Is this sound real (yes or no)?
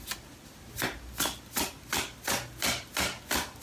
yes